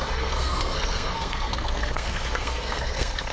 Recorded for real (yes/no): no